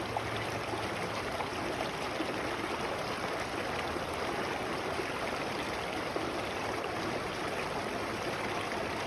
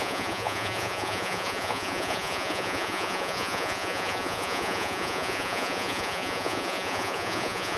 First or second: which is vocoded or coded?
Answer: second